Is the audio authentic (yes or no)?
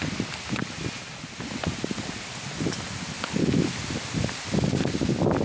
yes